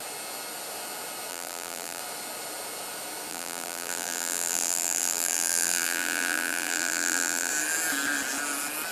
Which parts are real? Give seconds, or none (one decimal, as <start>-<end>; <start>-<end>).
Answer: 0.0-1.3; 2.0-3.3; 7.5-8.9

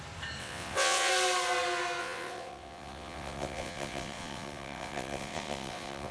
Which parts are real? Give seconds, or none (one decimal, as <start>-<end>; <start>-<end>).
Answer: 0.0-0.4; 1.1-2.0